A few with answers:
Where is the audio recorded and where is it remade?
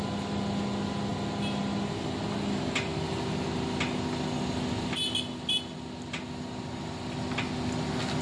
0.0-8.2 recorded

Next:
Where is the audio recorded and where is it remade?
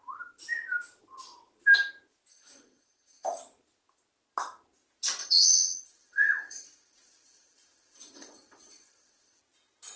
0.0-2.3 recorded; 2.3-3.4 remade; 3.4-5.2 recorded; 5.2-9.4 remade; 9.4-10.0 recorded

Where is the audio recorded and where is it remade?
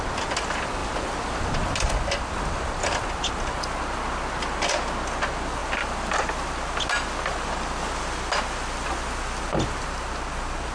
0.0-10.7 recorded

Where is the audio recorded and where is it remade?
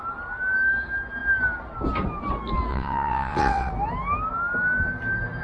0.0-2.7 recorded; 2.7-3.7 remade; 3.7-5.4 recorded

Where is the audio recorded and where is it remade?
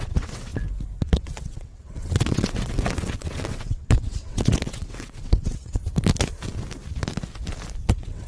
0.0-0.5 remade; 0.5-1.0 recorded; 1.0-5.8 remade; 5.8-7.9 recorded; 7.9-8.3 remade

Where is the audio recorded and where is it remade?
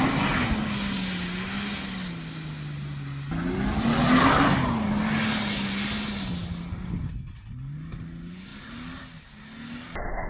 0.0-10.3 recorded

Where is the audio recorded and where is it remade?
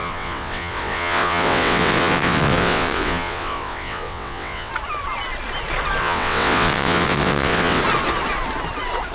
0.0-4.7 remade; 4.7-6.0 recorded; 6.0-7.8 remade; 7.8-9.1 recorded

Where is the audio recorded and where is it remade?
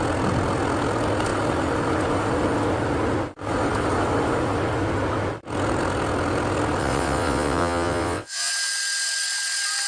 0.0-6.8 recorded; 6.8-8.5 remade; 8.5-9.9 recorded